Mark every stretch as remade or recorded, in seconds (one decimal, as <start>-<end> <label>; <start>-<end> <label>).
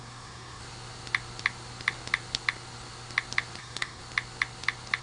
0.0-0.6 remade; 0.6-3.6 recorded; 3.6-4.0 remade; 4.0-5.0 recorded